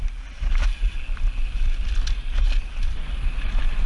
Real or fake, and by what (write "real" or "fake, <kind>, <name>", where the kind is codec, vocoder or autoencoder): real